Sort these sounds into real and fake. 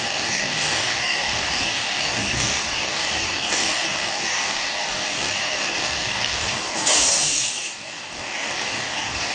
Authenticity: fake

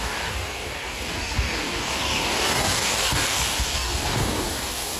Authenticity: fake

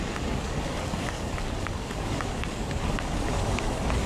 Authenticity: fake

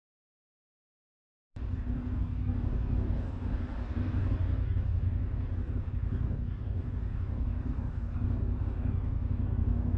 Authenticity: fake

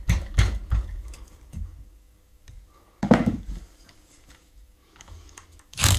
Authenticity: fake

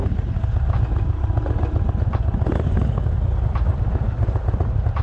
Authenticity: real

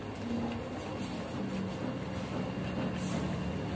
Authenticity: real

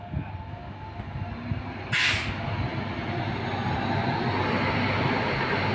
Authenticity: real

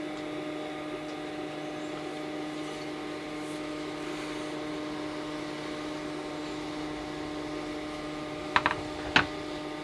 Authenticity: real